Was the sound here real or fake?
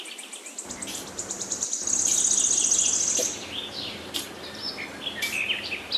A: real